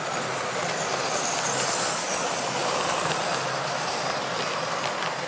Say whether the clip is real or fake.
real